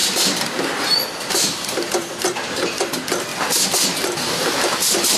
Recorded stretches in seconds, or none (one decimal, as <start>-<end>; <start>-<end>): 2.3-3.3